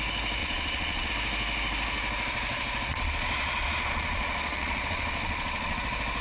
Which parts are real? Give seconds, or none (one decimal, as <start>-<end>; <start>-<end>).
0.0-0.4; 1.1-2.9; 5.8-6.2

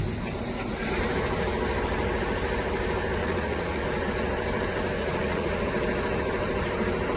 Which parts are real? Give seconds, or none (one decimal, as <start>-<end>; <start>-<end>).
0.0-3.2; 3.8-5.0; 5.7-7.2

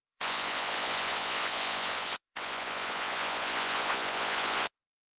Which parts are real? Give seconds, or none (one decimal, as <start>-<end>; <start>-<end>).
none

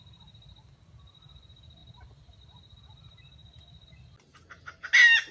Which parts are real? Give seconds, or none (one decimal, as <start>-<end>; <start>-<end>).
0.0-5.3

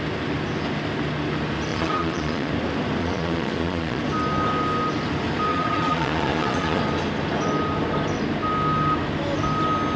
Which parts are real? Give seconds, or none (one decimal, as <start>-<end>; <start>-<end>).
0.0-1.7; 2.5-3.0; 4.0-5.5; 6.8-10.0

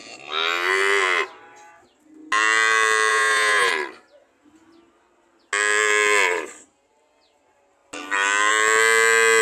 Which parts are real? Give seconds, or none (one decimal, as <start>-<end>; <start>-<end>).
0.0-3.1; 3.7-9.4

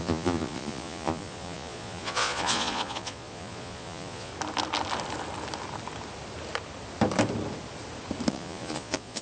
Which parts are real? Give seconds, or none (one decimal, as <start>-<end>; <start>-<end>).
4.3-8.3